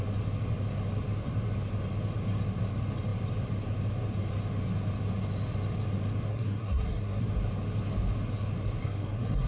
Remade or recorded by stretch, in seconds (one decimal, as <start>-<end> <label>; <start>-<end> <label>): 0.0-6.3 recorded; 6.3-7.3 remade; 7.3-8.8 recorded; 8.8-9.5 remade